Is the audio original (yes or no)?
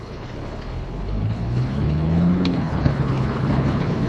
no